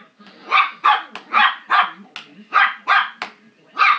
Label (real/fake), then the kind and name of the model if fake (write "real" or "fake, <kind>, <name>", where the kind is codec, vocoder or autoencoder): real